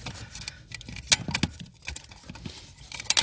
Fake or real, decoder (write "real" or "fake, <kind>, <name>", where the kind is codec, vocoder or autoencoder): real